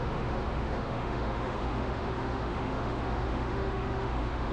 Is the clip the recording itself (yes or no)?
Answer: no